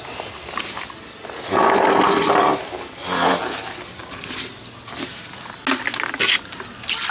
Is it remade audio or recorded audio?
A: recorded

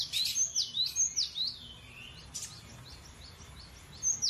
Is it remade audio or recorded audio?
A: recorded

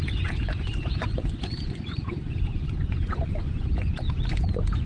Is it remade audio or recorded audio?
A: remade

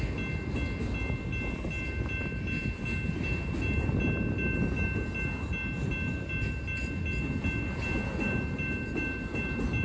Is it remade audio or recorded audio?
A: recorded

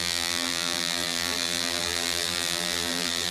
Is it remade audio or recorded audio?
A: remade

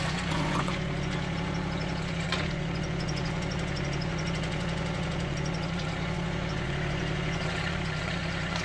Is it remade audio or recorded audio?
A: remade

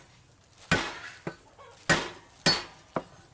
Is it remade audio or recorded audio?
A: recorded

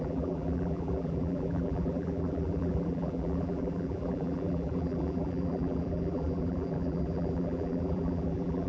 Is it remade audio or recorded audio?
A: remade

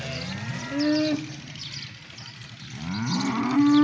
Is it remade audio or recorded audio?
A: recorded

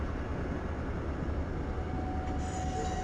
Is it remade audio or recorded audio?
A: recorded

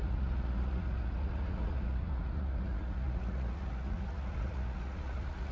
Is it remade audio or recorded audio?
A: remade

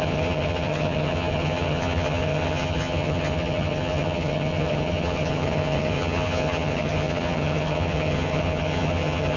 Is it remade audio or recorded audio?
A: remade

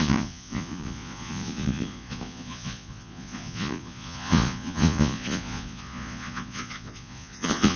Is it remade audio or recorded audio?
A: remade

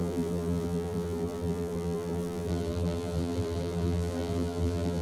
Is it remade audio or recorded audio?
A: remade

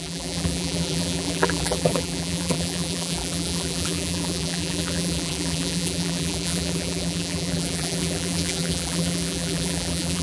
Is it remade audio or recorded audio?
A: remade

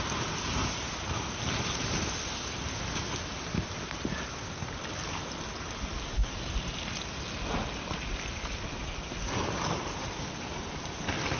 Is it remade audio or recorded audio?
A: recorded